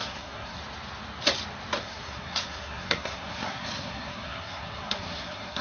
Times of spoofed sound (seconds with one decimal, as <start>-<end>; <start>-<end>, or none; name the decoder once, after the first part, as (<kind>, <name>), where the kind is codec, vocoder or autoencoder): 0.0-0.6 (codec, SNAC); 1.8-5.6